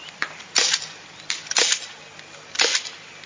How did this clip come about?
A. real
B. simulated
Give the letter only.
A